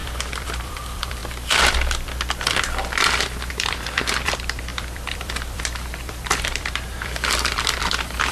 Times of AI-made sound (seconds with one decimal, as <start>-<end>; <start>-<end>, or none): 0.0-1.2; 3.5-8.3